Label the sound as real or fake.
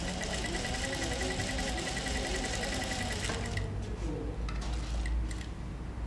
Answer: real